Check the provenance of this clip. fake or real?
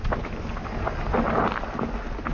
real